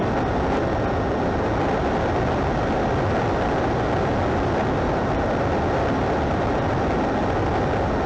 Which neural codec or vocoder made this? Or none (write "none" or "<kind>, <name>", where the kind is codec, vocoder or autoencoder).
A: none